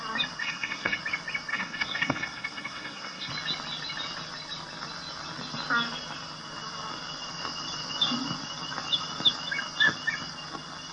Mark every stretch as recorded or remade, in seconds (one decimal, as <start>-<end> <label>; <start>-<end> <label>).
0.0-0.4 recorded; 0.4-1.0 remade; 1.0-1.5 recorded; 1.5-3.3 remade; 3.3-10.9 recorded